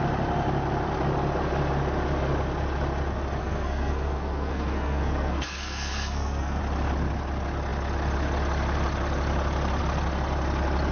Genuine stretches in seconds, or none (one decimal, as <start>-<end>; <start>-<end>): 0.0-3.4; 6.6-10.9